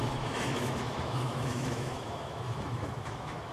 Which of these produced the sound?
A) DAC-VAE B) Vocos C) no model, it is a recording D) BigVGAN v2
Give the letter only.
A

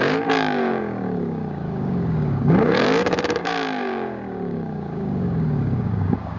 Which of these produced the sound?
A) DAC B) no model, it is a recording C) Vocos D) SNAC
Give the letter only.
A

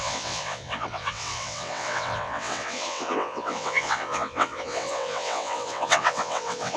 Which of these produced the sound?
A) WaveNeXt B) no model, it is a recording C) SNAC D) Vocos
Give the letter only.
A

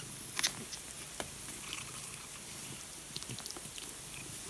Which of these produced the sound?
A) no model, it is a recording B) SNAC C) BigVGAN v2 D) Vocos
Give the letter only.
A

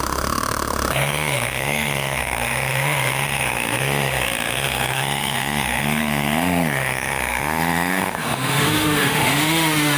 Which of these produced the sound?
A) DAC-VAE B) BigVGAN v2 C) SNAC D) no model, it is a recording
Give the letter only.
A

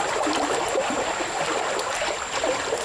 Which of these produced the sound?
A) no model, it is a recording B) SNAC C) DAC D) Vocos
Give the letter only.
A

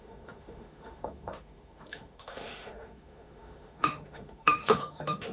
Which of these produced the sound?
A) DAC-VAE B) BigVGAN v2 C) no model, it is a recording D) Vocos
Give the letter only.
A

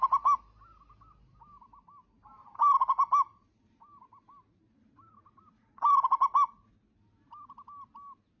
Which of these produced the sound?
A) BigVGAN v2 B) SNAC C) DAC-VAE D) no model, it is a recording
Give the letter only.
D